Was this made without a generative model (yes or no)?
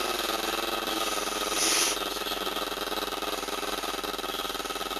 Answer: yes